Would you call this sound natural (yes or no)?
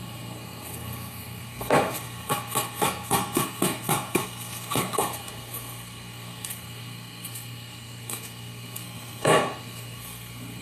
no